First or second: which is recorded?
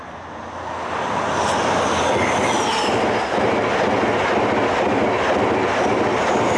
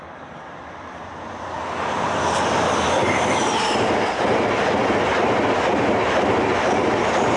first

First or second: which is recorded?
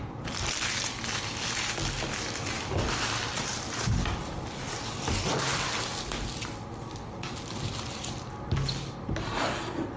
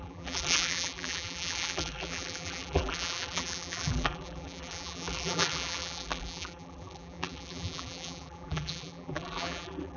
first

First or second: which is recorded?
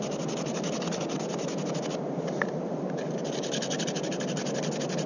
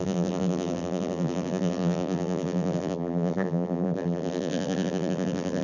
first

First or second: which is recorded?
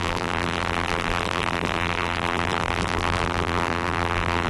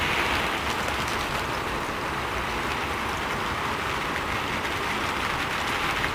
second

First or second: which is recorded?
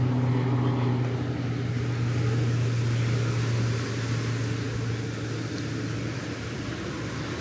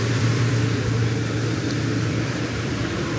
first